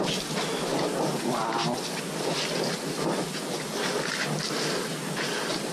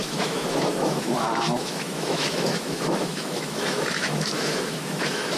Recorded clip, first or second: first